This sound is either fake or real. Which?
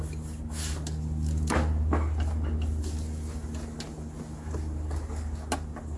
real